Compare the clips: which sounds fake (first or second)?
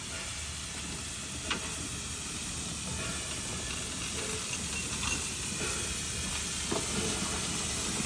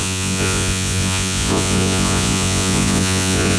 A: second